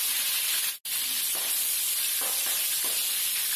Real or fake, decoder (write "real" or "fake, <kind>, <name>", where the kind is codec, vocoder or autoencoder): real